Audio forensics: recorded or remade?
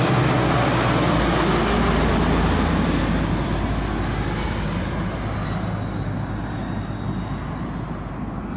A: recorded